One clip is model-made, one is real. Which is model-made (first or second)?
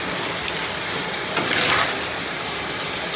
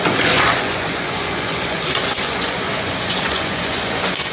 second